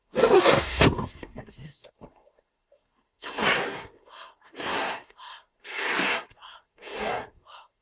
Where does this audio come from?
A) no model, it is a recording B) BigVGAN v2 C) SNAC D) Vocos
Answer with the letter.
C